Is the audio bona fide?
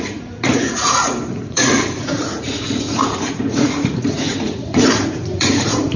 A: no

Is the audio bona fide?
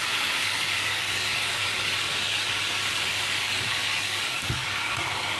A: no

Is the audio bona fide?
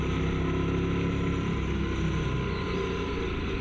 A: yes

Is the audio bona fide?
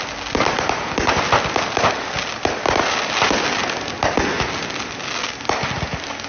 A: yes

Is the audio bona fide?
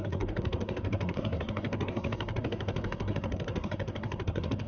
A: no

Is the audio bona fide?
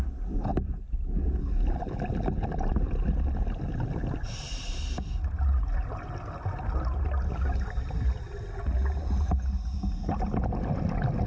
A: yes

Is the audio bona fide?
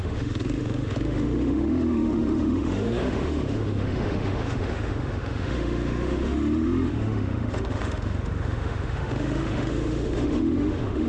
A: no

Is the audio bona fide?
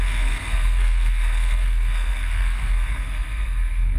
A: no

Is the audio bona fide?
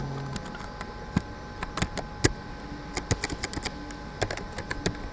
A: yes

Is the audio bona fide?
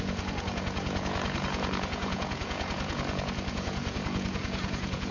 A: no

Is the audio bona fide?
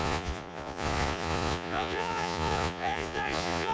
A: no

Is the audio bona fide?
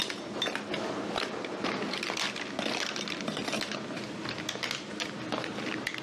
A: yes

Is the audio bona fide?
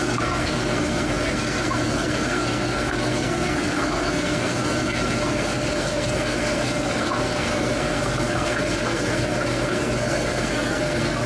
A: no